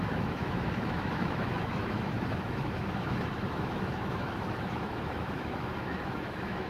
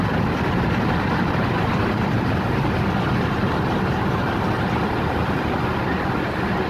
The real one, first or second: second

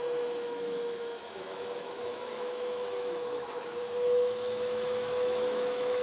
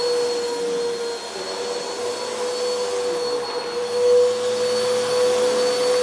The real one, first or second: second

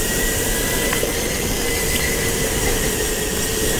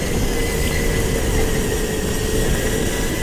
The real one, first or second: second